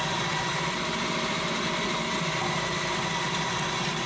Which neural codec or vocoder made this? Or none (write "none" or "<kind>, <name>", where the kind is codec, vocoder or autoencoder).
none